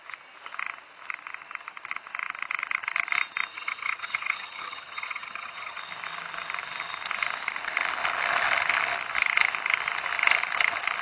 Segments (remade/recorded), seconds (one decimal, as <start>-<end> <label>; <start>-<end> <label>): 0.0-3.5 recorded; 3.5-5.8 remade; 5.8-11.0 recorded